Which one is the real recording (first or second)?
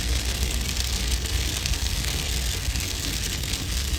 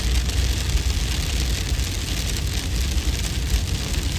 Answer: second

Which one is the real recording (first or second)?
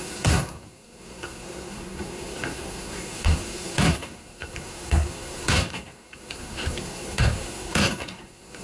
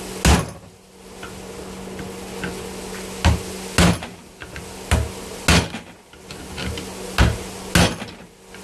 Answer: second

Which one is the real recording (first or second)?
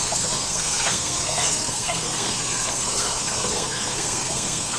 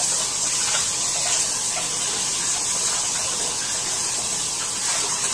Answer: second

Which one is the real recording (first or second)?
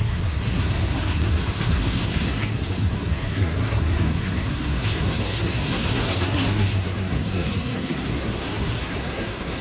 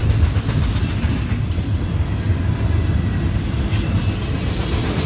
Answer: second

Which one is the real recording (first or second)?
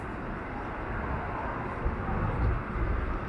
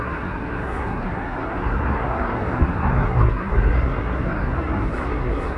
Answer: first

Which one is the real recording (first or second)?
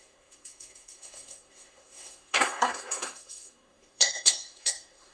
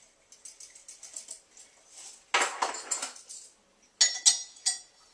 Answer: second